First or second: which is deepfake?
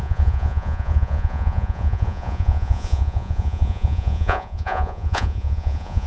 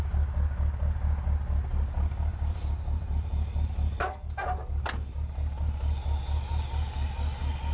first